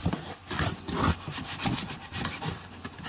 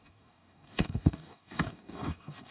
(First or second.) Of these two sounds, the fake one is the second